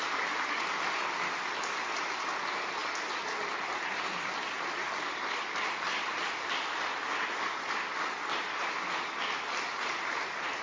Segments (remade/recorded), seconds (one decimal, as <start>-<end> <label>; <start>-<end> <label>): 0.0-10.6 recorded